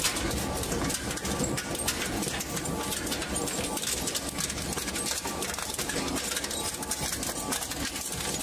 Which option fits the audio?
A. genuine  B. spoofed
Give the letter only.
A